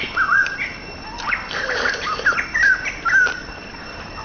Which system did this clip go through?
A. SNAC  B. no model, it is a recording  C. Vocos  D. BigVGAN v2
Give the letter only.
B